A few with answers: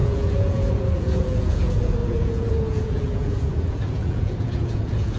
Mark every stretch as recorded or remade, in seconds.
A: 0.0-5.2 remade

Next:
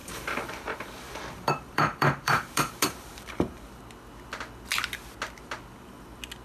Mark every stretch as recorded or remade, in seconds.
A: 0.0-3.8 remade; 3.8-6.4 recorded